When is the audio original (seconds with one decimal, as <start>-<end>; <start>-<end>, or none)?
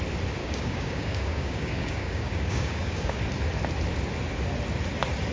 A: 0.0-0.4; 3.2-5.3